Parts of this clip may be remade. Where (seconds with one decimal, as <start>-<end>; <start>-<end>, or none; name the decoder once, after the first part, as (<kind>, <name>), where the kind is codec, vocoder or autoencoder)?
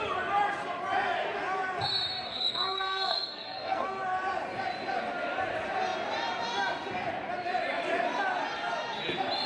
2.3-4.0 (codec, SNAC)